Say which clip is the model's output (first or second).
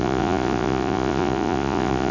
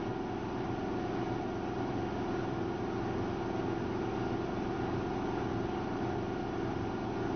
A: first